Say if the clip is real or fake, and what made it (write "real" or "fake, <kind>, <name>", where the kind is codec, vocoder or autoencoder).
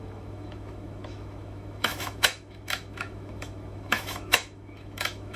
fake, autoencoder, DAC-VAE